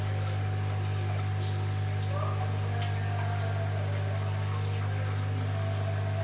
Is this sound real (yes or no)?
yes